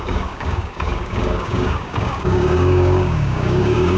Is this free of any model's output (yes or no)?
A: no